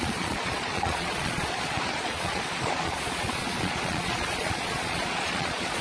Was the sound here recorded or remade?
remade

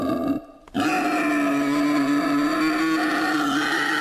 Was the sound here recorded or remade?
recorded